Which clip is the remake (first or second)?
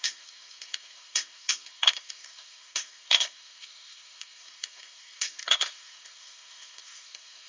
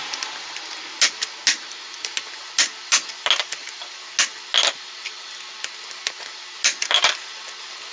first